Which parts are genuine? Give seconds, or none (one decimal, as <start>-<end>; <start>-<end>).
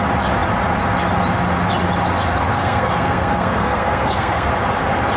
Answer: 0.0-2.4; 4.5-5.2